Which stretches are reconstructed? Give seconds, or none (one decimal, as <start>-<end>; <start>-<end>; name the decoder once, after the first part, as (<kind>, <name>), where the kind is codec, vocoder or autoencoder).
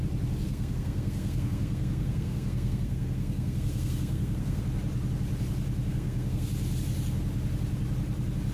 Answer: 0.4-4.6 (codec, SNAC); 5.9-6.5